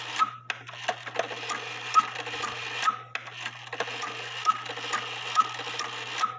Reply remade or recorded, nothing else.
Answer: recorded